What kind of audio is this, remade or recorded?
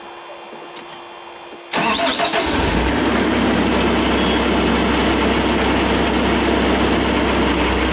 recorded